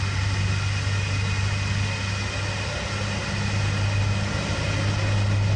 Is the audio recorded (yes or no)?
yes